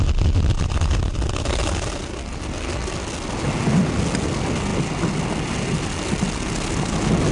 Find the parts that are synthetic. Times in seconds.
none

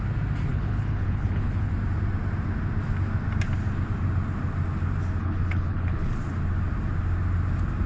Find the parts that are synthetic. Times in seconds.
0.5-1.7 (codec, HILCodec); 5.2-6.1